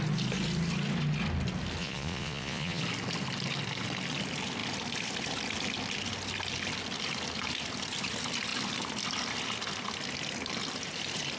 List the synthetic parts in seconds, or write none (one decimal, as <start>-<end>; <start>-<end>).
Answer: 1.8-2.8